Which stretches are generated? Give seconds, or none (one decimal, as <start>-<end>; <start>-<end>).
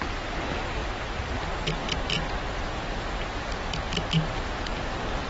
none